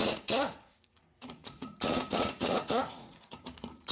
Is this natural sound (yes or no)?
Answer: no